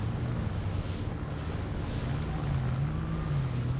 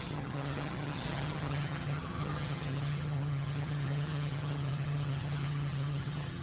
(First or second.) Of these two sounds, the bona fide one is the first